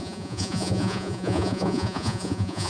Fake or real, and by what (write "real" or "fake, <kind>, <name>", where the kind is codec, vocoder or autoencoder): fake, vocoder, Vocos